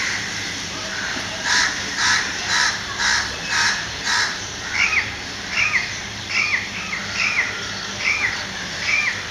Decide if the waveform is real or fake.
fake